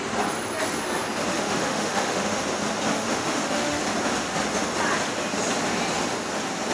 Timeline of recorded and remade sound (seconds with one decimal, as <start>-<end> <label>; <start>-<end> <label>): 0.0-1.3 recorded; 1.3-2.4 remade; 2.4-2.9 recorded; 2.9-3.8 remade; 3.8-6.7 recorded